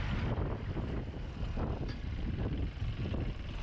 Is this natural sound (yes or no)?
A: yes